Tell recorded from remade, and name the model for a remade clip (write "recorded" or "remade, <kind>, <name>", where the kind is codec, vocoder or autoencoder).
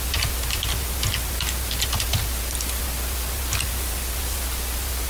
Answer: recorded